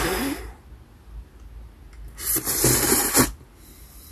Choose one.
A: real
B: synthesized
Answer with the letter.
A